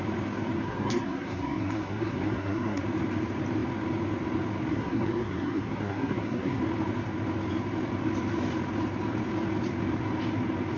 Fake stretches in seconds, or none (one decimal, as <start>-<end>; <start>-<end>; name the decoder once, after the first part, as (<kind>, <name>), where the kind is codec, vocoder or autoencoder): 0.6-2.8 (codec, SNAC); 4.7-6.6